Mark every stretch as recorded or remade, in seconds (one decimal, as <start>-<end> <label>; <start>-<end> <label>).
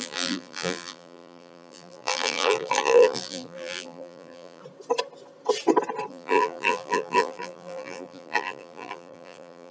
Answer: 0.0-4.6 remade; 4.6-6.1 recorded; 6.1-9.7 remade